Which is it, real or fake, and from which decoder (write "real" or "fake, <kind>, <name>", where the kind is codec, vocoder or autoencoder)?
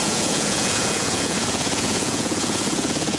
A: fake, vocoder, Vocos